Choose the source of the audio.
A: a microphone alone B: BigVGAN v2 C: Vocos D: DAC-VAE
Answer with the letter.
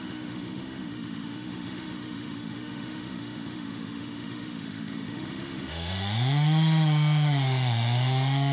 D